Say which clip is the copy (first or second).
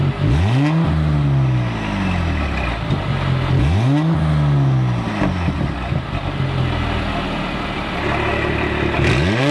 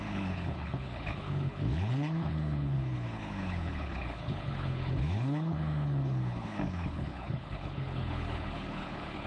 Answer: second